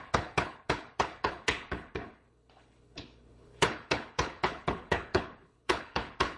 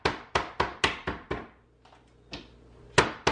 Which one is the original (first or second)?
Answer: second